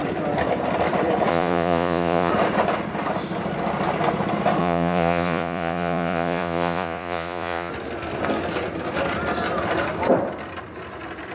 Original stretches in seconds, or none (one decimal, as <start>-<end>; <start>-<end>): 0.0-1.3; 2.3-4.6; 7.7-11.3